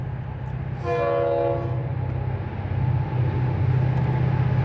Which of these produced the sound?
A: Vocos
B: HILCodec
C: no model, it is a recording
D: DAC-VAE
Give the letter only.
C